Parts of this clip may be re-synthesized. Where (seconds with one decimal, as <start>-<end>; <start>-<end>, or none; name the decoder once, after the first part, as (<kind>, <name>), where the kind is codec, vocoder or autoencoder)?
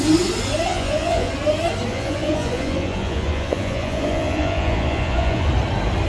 0.7-1.3 (vocoder, Vocos); 1.9-5.5